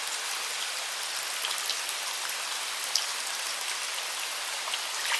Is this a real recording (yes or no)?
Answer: yes